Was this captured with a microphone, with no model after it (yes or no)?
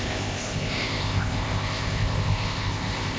no